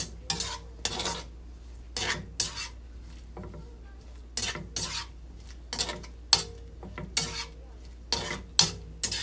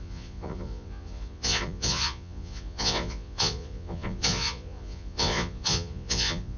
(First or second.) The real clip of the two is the first